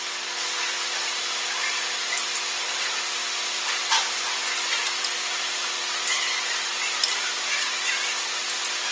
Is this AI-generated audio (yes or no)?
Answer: no